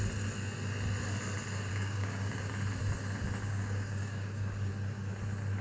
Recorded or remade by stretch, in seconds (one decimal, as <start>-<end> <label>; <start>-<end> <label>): 0.0-1.7 recorded; 1.7-2.5 remade; 2.5-3.4 recorded; 3.4-4.7 remade; 4.7-5.6 recorded